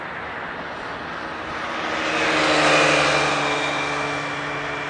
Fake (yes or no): no